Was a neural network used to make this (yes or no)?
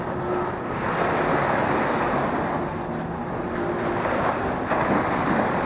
no